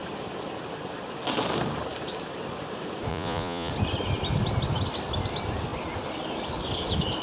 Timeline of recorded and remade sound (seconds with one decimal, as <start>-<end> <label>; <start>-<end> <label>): 0.0-3.1 recorded; 3.1-3.7 remade; 3.7-7.2 recorded